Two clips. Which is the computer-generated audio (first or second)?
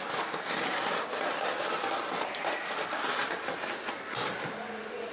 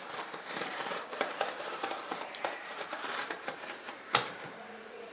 second